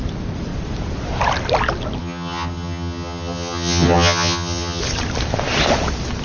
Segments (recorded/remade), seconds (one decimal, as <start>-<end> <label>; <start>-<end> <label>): 0.0-2.0 recorded; 2.0-4.8 remade; 4.8-6.2 recorded